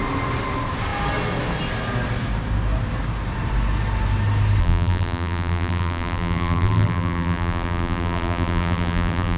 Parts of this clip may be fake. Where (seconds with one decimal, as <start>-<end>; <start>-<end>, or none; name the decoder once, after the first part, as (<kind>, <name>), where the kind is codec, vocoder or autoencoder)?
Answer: 4.6-9.4 (vocoder, BigVGAN v2)

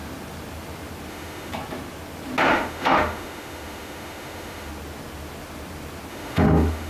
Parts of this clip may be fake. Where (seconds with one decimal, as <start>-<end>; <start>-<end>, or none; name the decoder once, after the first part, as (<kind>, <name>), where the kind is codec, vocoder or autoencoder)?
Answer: 1.1-1.5 (autoencoder, DAC-VAE); 2.5-4.7; 6.1-6.9